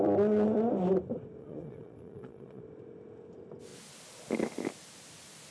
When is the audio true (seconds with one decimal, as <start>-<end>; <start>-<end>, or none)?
0.0-1.4; 2.6-5.5